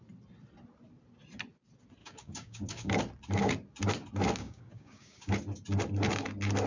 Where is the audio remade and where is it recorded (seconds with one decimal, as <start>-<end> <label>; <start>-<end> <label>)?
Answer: 0.0-2.0 recorded; 2.0-2.9 remade; 2.9-4.4 recorded; 4.4-5.3 remade; 5.3-6.7 recorded